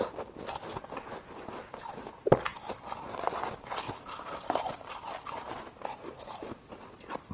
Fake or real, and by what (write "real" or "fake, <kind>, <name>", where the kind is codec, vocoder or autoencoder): real